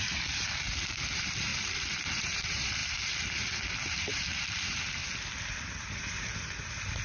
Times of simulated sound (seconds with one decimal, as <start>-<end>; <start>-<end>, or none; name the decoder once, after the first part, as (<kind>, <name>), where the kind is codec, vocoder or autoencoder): 0.0-2.8 (vocoder, BigVGAN v2); 3.9-5.0; 5.8-7.0